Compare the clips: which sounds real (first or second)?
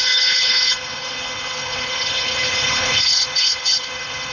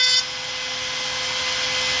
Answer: second